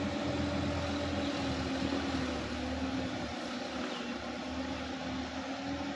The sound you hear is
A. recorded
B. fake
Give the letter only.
A